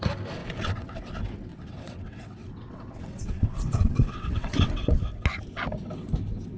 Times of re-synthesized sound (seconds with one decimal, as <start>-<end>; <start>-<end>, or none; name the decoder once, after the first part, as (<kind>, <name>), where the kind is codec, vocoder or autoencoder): 0.4-1.0 (vocoder, WaveNeXt); 1.5-5.0